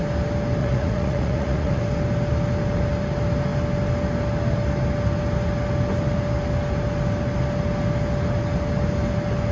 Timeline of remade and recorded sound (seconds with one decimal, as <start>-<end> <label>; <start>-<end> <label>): 0.0-0.6 recorded; 0.6-1.8 remade; 1.8-9.5 recorded